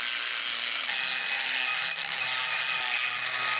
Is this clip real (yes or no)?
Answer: yes